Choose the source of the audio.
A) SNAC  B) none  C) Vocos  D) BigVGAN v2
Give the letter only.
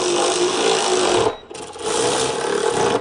B